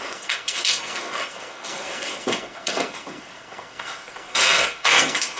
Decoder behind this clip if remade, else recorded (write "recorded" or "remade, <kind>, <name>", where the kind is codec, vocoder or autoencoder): remade, codec, SNAC